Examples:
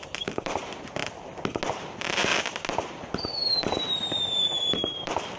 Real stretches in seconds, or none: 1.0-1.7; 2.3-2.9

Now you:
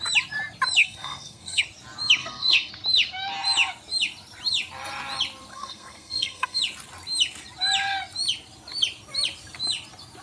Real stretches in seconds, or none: 0.0-0.8; 1.6-2.2; 2.7-5.5; 6.6-10.2

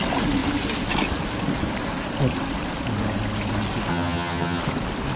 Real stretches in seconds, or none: 0.0-3.9; 4.6-5.2

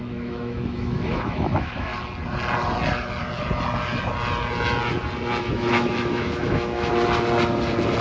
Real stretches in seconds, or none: 1.9-5.4; 6.9-8.0